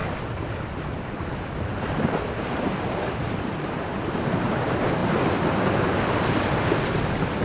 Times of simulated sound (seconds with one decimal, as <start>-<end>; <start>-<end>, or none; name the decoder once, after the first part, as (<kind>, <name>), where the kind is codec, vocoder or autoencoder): 1.7-5.0 (vocoder, BigVGAN v2); 6.2-7.4